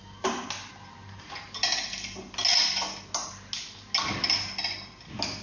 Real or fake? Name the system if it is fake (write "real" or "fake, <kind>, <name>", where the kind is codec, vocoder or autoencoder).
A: real